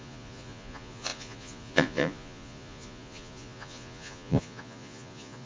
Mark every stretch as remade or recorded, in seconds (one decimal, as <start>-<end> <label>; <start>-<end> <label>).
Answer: 0.0-5.5 remade